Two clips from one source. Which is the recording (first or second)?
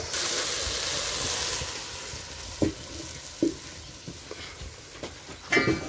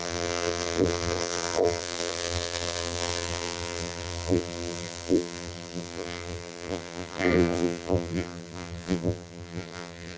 first